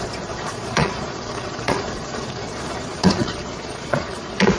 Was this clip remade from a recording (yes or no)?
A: yes